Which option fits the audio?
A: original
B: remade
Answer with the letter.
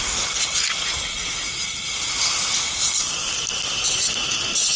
A